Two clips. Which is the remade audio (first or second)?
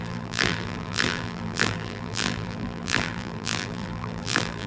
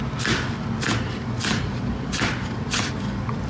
first